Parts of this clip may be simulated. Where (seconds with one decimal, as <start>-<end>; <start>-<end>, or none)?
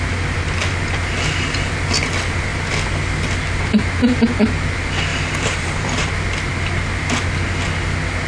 5.1-6.1